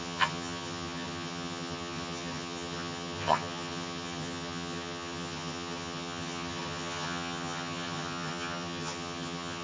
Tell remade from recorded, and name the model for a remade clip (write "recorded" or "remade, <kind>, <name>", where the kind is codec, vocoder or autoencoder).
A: remade, vocoder, HiFi-GAN